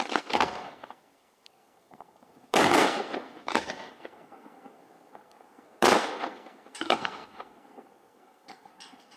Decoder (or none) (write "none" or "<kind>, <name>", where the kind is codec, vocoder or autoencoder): codec, SNAC